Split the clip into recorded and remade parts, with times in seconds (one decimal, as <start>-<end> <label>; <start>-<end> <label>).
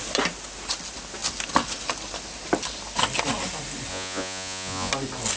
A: 0.0-3.9 recorded; 3.9-4.9 remade; 4.9-5.4 recorded